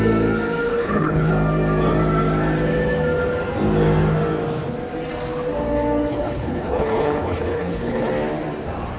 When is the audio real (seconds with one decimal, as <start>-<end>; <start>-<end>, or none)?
0.0-0.7; 1.3-6.1; 8.1-9.0